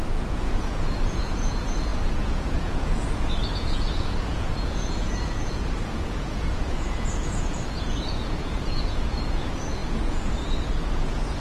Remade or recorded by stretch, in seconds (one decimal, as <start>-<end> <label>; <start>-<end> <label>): 0.0-11.4 remade